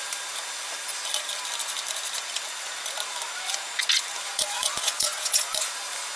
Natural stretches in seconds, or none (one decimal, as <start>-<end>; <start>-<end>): 0.0-4.3; 5.7-6.2